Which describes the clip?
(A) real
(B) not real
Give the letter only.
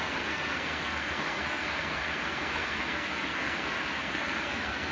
B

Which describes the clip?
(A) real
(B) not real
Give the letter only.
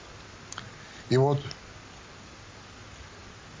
A